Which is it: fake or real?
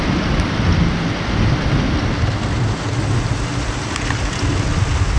real